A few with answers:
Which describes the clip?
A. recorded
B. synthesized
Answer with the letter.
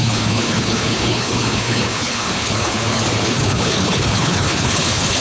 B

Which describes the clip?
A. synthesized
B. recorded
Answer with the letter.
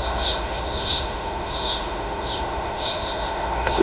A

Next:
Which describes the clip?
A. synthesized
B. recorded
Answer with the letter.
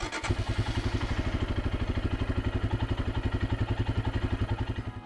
B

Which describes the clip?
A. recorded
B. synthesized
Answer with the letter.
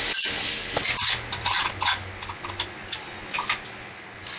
A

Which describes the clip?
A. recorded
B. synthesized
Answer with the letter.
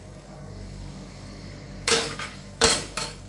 B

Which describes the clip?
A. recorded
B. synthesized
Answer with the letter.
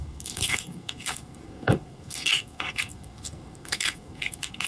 B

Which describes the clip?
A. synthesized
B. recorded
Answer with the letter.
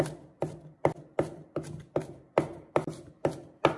B